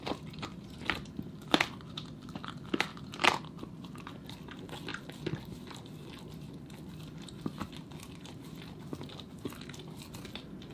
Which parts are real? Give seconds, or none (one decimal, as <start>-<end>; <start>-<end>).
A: 0.0-10.7